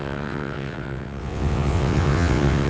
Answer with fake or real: fake